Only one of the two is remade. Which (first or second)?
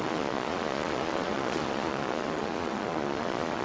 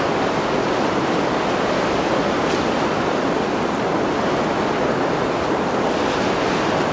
first